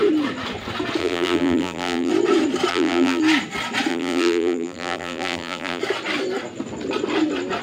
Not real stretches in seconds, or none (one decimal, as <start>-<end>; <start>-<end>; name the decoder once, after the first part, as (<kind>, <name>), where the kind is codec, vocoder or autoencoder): 1.0-2.1 (vocoder, BigVGAN v2); 2.7-3.2; 3.9-5.8